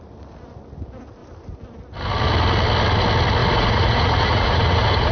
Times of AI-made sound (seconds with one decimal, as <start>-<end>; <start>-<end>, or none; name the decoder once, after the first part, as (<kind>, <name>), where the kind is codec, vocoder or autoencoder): 3.4-5.1 (vocoder, Vocos)